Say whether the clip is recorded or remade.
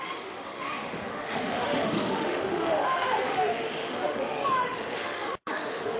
remade